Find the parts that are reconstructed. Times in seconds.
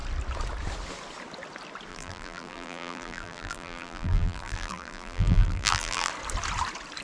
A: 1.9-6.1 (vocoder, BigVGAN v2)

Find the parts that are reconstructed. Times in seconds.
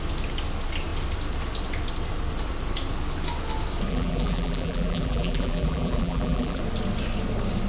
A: 3.9-6.6 (vocoder, BigVGAN v2)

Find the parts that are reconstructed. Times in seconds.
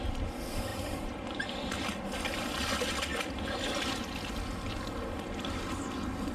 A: none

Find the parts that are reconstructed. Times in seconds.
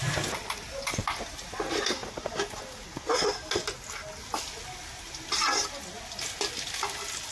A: none